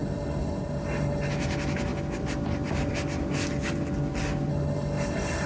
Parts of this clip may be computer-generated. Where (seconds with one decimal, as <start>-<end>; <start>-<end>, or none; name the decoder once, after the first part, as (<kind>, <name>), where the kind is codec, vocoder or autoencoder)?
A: 0.0-1.3 (codec, HILCodec); 4.5-5.5